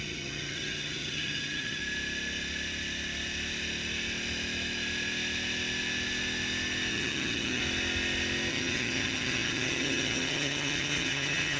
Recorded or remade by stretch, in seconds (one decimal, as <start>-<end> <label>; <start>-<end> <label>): 0.0-1.8 remade; 1.8-6.9 recorded; 6.9-7.6 remade; 7.6-8.5 recorded; 8.5-11.6 remade